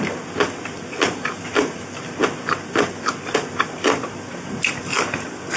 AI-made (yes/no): no